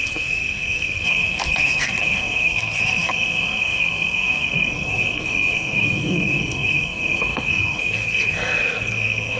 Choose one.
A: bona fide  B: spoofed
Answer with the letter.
B